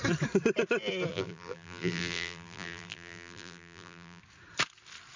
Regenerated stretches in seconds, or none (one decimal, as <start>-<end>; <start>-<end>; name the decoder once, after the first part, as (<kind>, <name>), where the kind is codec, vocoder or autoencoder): 1.1-4.2 (vocoder, BigVGAN v2)